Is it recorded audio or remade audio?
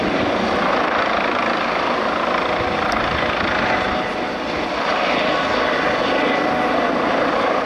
recorded